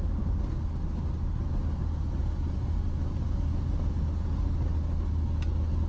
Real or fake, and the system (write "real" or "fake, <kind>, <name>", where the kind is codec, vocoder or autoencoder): real